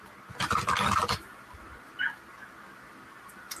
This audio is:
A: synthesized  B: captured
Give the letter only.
B